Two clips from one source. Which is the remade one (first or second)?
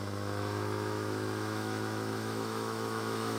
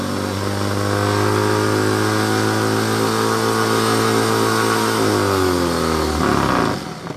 first